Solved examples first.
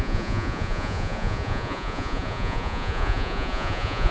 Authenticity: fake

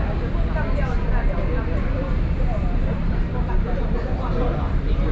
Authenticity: real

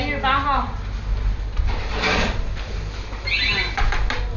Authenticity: real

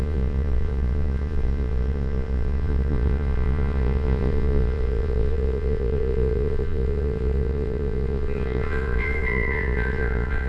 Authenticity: fake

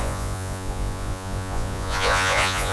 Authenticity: fake